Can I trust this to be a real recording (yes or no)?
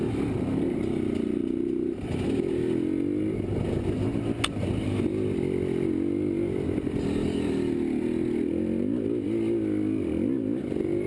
yes